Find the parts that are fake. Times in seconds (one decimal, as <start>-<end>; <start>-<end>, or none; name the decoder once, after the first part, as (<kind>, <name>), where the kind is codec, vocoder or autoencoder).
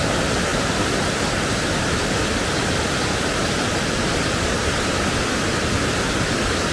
0.0-6.7 (vocoder, BigVGAN v2)